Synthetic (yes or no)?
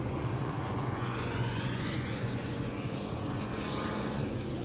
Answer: yes